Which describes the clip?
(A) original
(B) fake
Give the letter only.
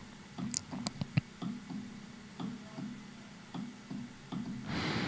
A